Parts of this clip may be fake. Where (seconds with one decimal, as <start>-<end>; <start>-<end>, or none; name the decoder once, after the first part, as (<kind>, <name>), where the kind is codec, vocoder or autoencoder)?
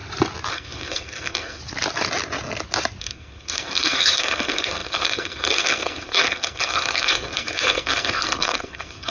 0.5-1.6 (codec, SNAC); 3.0-9.1